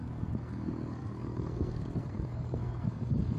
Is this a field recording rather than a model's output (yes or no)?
no